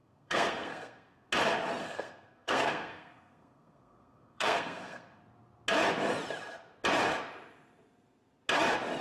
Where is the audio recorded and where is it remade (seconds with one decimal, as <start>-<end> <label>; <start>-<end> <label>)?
0.0-1.3 remade; 1.3-1.8 recorded; 1.8-5.2 remade; 5.2-9.0 recorded